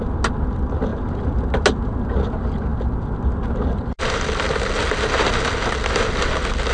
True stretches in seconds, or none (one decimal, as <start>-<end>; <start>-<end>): 0.0-6.7